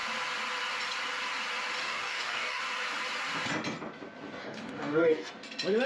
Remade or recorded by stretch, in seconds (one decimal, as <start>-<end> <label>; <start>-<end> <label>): 0.0-1.8 recorded; 1.8-2.6 remade; 2.6-4.4 recorded; 4.4-5.3 remade; 5.3-5.9 recorded